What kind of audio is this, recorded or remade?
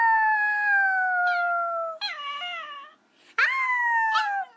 recorded